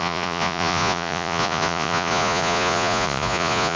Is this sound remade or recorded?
remade